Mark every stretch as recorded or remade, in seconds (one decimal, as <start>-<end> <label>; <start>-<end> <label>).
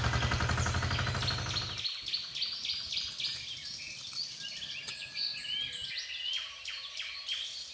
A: 0.0-7.7 recorded